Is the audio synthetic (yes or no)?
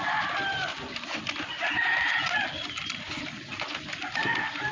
no